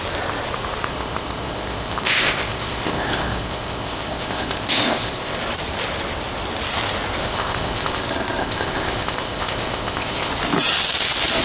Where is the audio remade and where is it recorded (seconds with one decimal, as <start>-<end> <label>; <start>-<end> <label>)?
0.0-0.9 recorded; 0.9-5.4 remade; 5.4-7.2 recorded; 7.2-8.0 remade; 8.0-8.4 recorded; 8.4-10.3 remade; 10.3-11.4 recorded